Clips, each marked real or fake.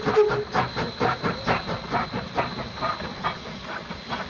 real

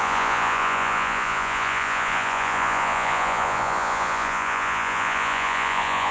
fake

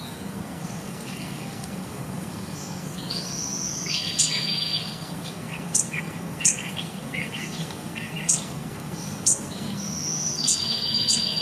fake